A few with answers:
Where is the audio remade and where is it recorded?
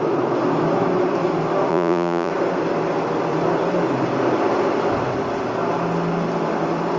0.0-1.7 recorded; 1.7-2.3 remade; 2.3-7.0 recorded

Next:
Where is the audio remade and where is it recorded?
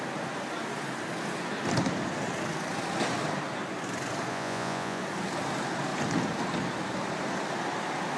0.0-4.3 recorded; 4.3-5.0 remade; 5.0-8.2 recorded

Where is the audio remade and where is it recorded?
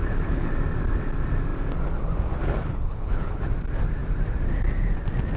0.0-0.5 remade; 0.5-2.4 recorded; 2.4-3.5 remade; 3.5-5.4 recorded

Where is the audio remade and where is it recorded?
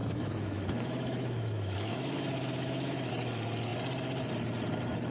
0.0-3.1 remade; 3.1-5.1 recorded